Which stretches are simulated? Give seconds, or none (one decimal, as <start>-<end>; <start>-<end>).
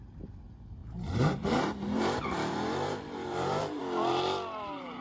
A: 0.8-3.8